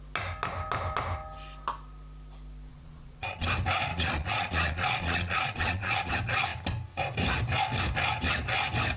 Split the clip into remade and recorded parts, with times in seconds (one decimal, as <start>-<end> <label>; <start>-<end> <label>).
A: 0.0-2.7 recorded; 2.7-3.5 remade; 3.5-3.9 recorded; 3.9-6.1 remade; 6.1-9.0 recorded